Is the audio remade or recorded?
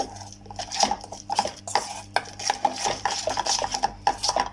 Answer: recorded